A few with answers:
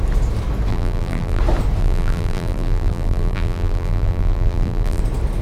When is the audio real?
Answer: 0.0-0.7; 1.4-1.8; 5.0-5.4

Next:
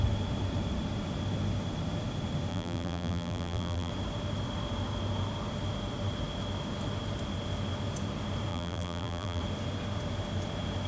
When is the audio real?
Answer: 0.0-2.5; 3.9-8.5; 9.4-10.9